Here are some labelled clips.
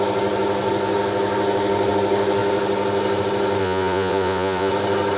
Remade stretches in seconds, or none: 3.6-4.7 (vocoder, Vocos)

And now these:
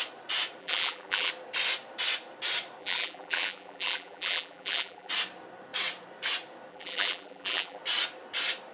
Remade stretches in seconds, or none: 0.6-1.3 (vocoder, BigVGAN v2); 2.8-5.1; 6.7-7.8